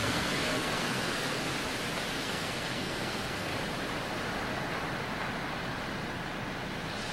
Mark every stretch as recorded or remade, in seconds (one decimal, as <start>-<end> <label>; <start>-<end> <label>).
0.0-1.5 remade; 1.5-2.2 recorded; 2.2-3.5 remade; 3.5-7.1 recorded